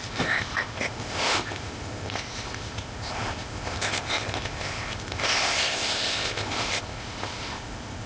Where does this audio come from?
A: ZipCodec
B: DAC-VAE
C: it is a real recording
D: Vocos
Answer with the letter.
A